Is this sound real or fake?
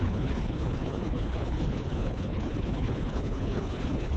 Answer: fake